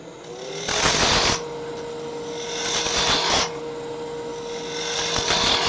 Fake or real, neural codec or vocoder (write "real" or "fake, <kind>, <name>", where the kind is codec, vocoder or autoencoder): real